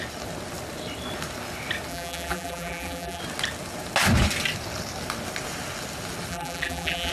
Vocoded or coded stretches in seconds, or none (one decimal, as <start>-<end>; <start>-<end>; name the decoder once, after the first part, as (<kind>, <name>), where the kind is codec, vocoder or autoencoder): 1.9-3.2 (vocoder, BigVGAN v2); 6.3-7.1

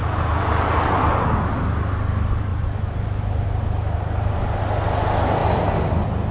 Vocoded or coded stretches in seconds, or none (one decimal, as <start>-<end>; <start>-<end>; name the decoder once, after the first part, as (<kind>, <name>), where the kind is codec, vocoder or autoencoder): 0.0-1.0 (vocoder, BigVGAN v2)

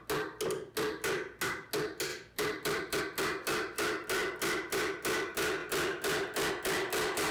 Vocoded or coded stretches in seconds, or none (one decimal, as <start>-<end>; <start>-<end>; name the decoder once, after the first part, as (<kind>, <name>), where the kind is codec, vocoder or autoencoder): 2.1-3.0 (vocoder, BigVGAN v2)

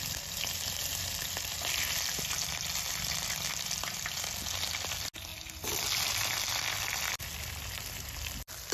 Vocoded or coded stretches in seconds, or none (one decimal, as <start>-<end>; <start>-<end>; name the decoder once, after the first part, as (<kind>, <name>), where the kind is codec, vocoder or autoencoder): none

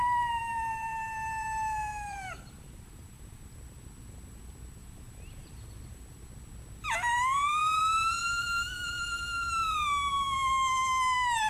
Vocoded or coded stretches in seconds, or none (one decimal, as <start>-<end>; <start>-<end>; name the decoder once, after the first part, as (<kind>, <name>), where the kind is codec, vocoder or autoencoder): 0.0-3.4 (vocoder, BigVGAN v2); 4.8-6.0; 7.6-8.2

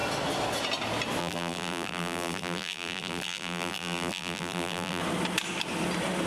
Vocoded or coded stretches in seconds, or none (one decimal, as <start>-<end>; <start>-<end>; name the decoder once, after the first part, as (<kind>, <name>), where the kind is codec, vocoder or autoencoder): 1.2-5.0 (vocoder, BigVGAN v2)